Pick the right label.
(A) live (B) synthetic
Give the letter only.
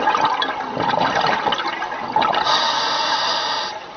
A